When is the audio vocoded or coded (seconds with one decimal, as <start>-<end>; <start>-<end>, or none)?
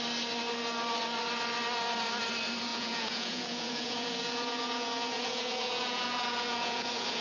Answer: 2.7-7.2